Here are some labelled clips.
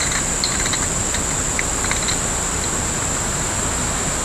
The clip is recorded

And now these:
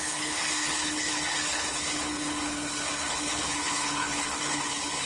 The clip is remade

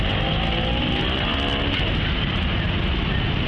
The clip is recorded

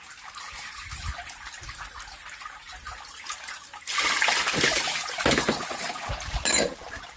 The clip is recorded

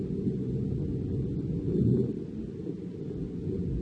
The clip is recorded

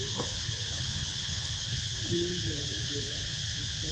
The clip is remade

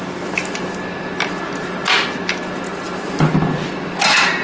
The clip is recorded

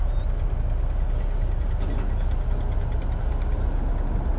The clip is recorded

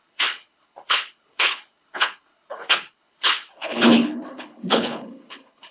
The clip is remade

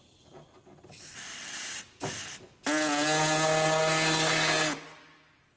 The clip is recorded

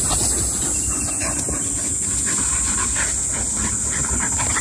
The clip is recorded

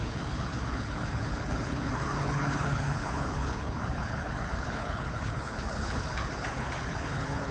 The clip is remade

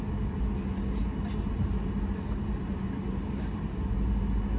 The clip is recorded